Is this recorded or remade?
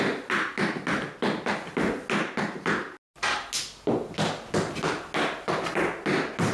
recorded